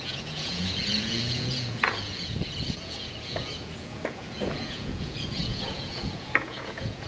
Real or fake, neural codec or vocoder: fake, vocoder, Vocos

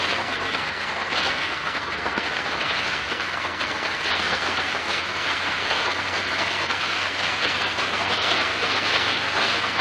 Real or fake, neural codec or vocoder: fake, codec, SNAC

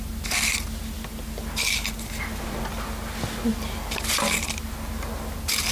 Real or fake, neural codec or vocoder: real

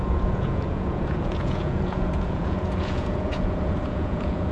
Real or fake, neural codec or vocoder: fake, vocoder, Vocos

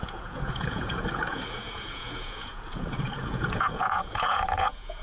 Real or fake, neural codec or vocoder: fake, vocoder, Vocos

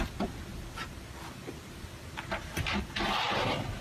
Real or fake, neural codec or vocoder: fake, vocoder, BigVGAN v2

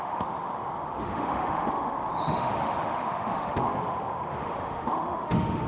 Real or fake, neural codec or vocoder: fake, autoencoder, DAC-VAE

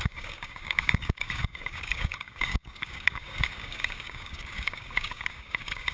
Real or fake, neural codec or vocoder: fake, codec, DAC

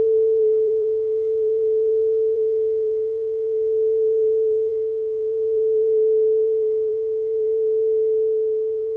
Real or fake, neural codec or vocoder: fake, vocoder, BigVGAN v2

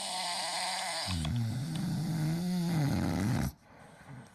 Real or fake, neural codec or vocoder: real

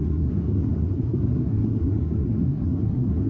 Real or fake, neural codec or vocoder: fake, codec, SNAC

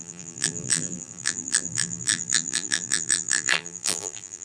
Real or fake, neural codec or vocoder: fake, vocoder, BigVGAN v2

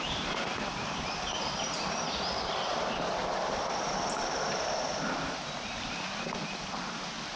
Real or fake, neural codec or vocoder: real